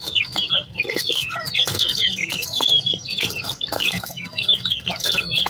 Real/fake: fake